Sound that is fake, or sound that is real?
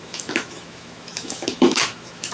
fake